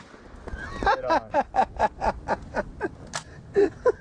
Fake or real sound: real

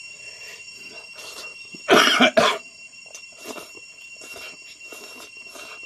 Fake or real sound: real